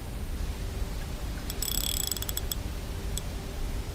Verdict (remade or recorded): remade